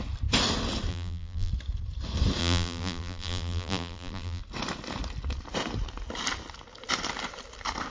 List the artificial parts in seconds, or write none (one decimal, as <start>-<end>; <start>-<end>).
0.9-1.5; 2.4-4.4